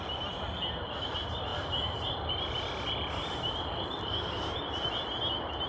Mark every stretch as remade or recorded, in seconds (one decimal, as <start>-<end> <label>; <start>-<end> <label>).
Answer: 0.0-5.7 recorded